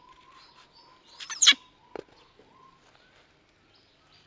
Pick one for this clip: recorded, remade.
recorded